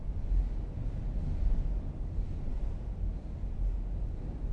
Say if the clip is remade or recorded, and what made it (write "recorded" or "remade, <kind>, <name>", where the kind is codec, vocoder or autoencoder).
recorded